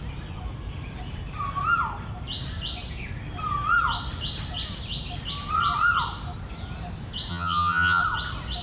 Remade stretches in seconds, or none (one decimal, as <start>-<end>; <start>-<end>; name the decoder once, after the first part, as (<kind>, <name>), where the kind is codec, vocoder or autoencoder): 7.3-8.0 (vocoder, HiFi-GAN)